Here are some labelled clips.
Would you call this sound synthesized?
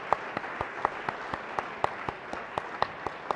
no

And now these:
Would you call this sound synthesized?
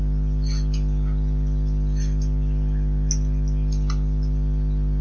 no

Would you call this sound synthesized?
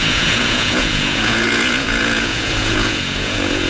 yes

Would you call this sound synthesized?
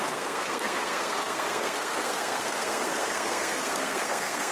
yes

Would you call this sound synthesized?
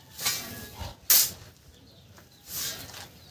no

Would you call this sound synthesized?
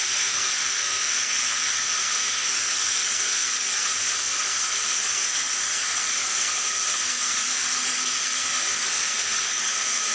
yes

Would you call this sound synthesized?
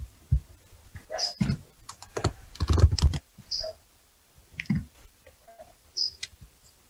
yes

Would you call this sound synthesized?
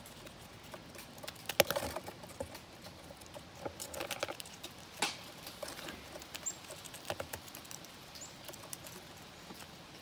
no